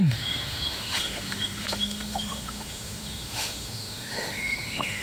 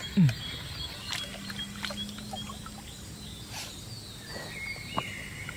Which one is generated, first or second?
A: first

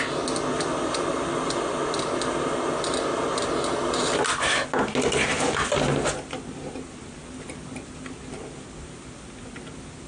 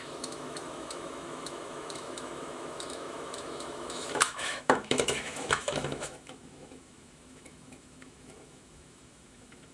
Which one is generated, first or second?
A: second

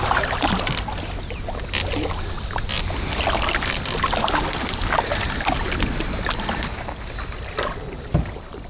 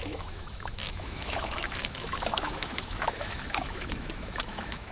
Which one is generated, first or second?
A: second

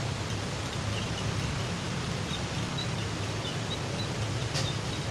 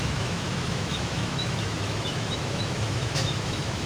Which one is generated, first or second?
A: second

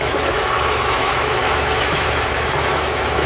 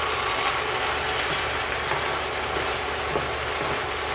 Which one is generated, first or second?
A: first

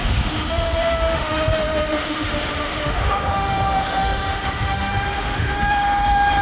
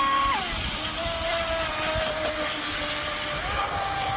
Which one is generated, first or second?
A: first